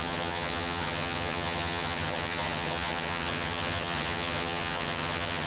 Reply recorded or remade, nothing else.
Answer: remade